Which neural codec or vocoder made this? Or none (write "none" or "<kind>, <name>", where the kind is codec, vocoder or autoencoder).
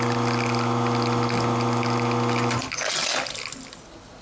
none